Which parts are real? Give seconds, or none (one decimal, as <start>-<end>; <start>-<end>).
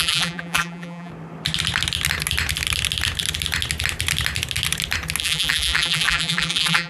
1.1-5.2